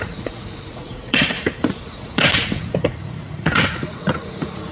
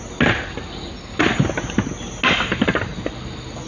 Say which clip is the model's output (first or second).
first